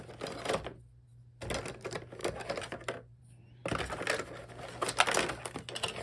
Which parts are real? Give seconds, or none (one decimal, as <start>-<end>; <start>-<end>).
0.0-6.0